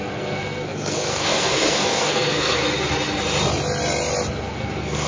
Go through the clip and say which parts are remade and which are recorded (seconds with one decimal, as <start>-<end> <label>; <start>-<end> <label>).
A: 0.0-2.6 remade; 2.6-4.4 recorded; 4.4-5.1 remade